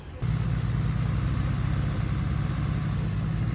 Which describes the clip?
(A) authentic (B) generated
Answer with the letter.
A